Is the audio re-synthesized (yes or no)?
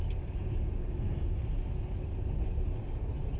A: no